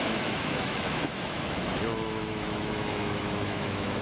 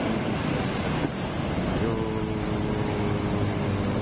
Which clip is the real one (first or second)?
second